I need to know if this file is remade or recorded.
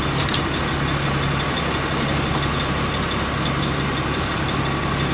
recorded